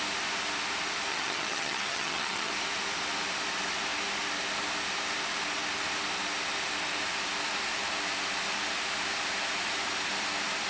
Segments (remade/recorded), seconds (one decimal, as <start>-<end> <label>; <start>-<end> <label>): 0.0-1.1 recorded; 1.1-2.5 remade; 2.5-10.7 recorded

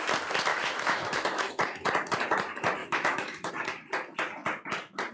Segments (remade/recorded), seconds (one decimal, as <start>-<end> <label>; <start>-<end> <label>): 0.0-0.5 recorded; 0.5-1.5 remade; 1.5-2.8 recorded; 2.8-3.5 remade; 3.5-5.1 recorded

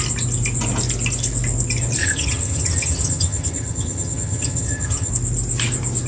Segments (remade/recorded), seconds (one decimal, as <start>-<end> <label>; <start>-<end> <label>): 0.0-2.0 recorded; 2.0-5.1 remade; 5.1-6.1 recorded

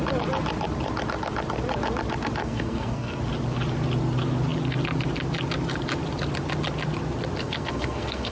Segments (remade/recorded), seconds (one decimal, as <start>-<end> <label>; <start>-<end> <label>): 0.0-2.4 recorded; 2.4-3.2 remade; 3.2-7.4 recorded; 7.4-8.3 remade

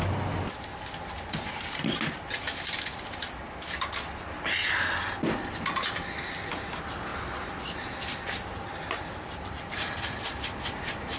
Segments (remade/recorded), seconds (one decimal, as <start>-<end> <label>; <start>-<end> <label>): 0.0-7.1 recorded; 7.1-10.4 remade; 10.4-11.2 recorded